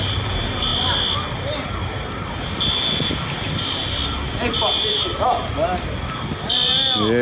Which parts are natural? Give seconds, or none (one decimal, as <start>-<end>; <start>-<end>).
0.0-7.2

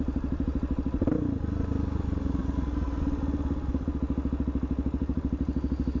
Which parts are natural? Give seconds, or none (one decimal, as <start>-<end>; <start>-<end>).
0.0-6.0

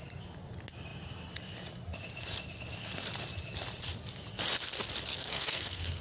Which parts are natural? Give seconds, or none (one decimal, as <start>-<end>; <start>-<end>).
0.0-5.1

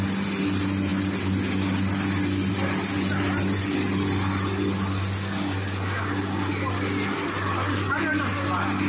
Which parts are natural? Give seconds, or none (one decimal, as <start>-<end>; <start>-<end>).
0.0-8.9